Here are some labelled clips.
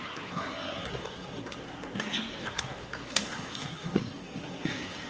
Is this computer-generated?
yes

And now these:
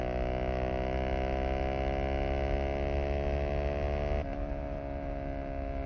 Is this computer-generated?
no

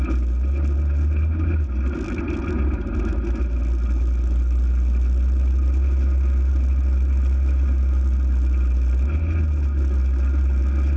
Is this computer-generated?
no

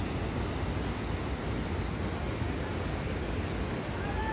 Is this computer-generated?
no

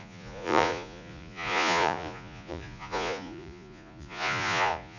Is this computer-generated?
yes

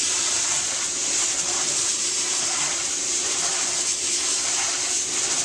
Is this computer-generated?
yes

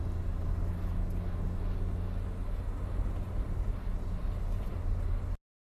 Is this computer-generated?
no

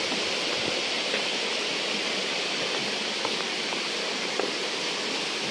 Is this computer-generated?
no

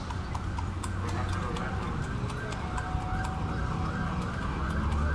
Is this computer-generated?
no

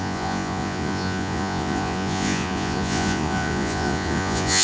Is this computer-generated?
yes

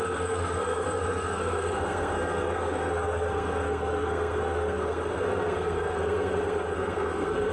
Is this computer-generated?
yes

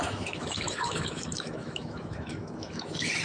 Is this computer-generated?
yes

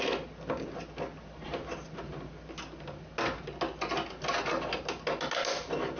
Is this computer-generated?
no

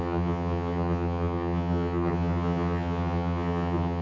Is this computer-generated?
yes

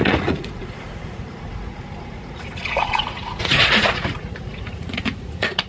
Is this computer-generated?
yes